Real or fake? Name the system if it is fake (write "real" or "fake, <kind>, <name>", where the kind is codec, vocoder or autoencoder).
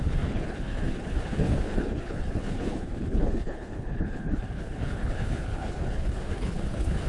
fake, codec, HILCodec